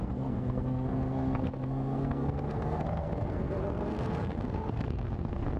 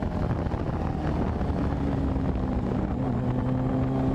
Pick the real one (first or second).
second